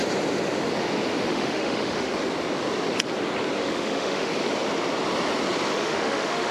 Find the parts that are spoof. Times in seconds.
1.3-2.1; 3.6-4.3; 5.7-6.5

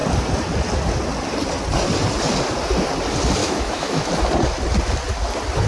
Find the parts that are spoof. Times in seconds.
3.4-4.1

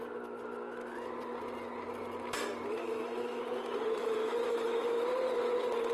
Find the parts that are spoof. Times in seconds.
2.8-3.4; 4.0-4.9

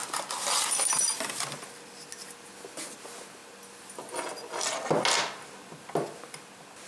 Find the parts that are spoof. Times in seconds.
none

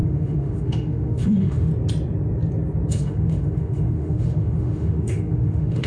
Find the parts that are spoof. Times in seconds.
0.0-1.7; 2.9-5.9